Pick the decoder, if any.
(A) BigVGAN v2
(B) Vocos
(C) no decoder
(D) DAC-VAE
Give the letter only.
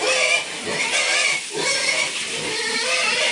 C